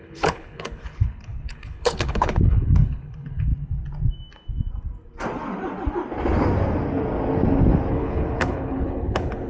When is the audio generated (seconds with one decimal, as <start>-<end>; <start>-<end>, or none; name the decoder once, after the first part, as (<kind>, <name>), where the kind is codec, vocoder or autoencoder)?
0.0-3.5 (codec, HILCodec); 7.9-9.5